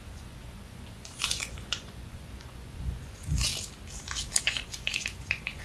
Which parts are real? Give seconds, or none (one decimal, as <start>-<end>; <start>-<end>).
3.5-4.4